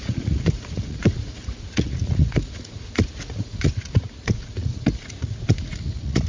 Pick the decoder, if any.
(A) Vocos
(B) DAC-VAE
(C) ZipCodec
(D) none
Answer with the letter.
A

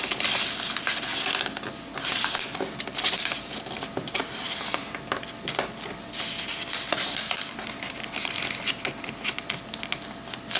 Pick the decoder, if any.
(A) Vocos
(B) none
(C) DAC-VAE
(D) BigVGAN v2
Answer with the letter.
B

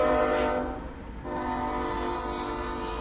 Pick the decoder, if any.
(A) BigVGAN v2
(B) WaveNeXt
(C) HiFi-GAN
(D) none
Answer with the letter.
D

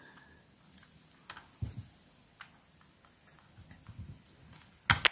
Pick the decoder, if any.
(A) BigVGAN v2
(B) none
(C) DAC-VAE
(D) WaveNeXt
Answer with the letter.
B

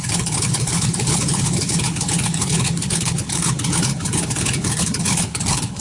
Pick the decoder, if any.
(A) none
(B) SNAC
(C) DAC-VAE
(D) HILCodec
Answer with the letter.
D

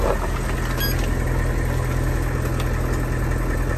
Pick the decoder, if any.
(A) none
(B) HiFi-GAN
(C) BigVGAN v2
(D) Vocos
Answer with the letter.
A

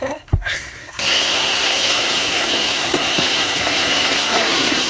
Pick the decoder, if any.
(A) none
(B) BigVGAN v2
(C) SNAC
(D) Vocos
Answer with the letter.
C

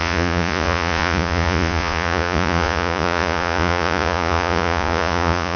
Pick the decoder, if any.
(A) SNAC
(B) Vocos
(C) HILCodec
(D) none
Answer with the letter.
B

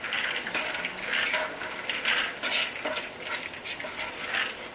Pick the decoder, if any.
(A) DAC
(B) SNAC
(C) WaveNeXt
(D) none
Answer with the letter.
D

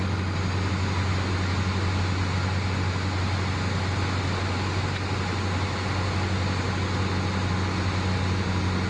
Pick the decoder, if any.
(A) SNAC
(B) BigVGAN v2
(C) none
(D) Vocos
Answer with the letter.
C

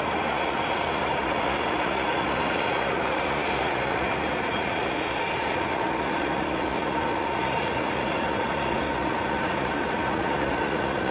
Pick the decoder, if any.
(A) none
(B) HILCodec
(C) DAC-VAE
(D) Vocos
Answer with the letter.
D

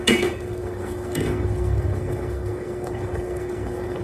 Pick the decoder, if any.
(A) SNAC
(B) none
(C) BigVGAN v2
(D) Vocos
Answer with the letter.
A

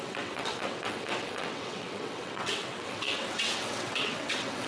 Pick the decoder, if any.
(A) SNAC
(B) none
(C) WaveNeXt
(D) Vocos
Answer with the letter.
C